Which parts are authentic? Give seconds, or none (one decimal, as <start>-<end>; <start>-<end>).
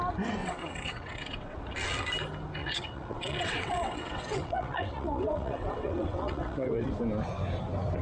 0.0-0.4; 1.6-2.6; 6.9-8.0